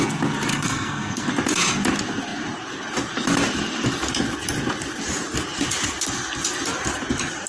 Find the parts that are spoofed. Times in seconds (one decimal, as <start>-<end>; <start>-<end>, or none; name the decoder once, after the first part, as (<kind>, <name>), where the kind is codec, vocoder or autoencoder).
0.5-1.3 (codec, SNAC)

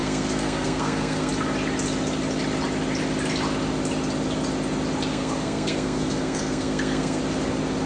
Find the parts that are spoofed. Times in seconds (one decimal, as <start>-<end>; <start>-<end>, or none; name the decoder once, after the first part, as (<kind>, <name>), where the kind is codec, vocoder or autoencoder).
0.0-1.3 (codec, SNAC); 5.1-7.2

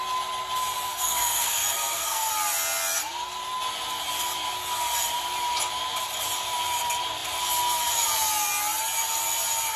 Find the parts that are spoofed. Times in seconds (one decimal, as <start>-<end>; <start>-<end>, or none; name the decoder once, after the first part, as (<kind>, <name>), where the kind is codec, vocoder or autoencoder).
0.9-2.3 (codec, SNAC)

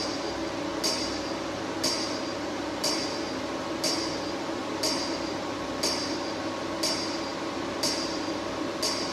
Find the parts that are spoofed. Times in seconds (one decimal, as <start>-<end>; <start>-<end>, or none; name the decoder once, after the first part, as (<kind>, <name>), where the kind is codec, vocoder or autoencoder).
none

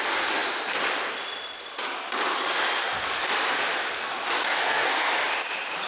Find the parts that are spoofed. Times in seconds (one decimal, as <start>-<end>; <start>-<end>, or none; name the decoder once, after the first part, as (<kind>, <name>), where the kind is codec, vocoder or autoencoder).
4.6-5.1 (codec, SNAC)

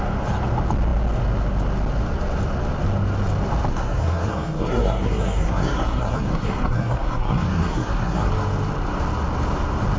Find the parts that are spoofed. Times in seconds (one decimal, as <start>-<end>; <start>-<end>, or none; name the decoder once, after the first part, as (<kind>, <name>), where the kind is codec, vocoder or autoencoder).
3.7-8.3 (codec, SNAC)

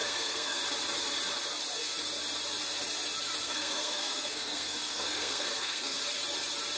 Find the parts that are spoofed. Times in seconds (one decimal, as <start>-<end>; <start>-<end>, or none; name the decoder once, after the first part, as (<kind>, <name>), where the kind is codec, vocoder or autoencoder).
0.0-0.6 (codec, SNAC); 3.4-6.0

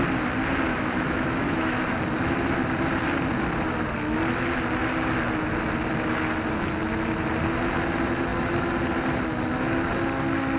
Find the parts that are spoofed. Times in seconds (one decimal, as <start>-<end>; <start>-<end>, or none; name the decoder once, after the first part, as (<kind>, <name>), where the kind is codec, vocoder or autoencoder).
0.7-1.8 (autoencoder, DAC-VAE)